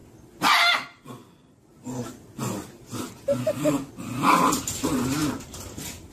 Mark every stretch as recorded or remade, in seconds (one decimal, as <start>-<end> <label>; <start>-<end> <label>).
0.0-6.1 recorded